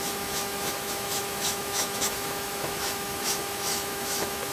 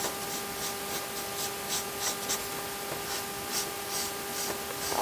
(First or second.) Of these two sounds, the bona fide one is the second